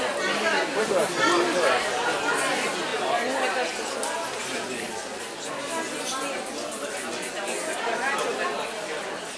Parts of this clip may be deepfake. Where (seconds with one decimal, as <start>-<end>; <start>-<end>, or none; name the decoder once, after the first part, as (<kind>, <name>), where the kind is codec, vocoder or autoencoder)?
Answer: none